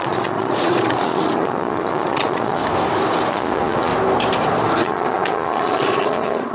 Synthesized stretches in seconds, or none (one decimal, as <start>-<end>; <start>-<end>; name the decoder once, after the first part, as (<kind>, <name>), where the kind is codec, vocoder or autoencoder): 0.0-2.6 (vocoder, Vocos); 3.3-3.9; 4.8-6.5